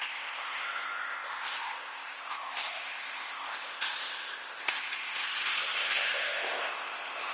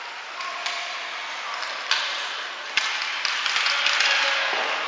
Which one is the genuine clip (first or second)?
second